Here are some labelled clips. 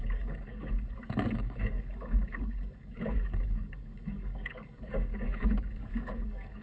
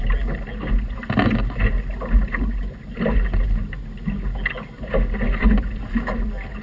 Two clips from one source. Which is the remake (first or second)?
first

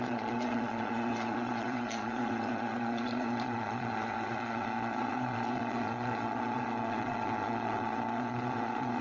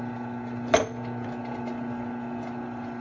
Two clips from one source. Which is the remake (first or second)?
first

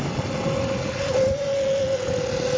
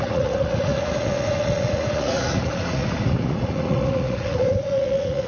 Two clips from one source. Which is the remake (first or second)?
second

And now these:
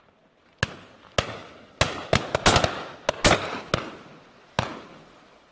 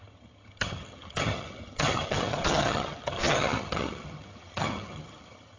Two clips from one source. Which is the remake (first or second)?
second